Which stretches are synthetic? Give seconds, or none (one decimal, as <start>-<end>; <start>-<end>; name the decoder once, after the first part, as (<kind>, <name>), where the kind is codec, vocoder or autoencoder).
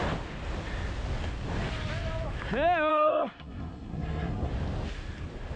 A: 2.9-4.5 (codec, SNAC)